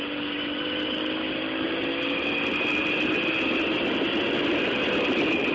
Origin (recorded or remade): recorded